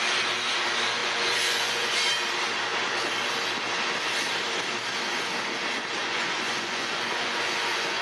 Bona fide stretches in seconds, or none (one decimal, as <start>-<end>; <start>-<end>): 0.0-1.0; 2.0-6.0

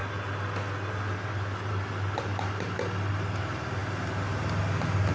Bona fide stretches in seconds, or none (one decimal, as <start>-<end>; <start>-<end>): 0.0-5.1

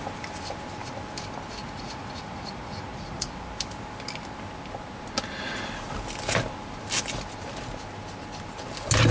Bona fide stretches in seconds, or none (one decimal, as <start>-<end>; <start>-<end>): 0.0-1.6; 3.3-9.1

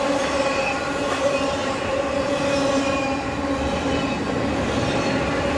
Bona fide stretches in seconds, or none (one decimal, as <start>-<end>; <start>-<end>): 0.0-5.6

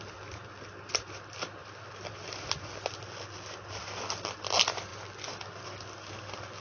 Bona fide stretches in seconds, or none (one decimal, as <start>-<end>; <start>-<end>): 0.0-6.6

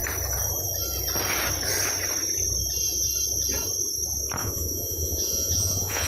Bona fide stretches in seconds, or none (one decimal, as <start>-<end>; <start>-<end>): 0.0-4.4

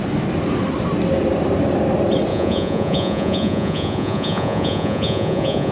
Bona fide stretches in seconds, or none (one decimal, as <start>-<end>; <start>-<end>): 0.0-2.3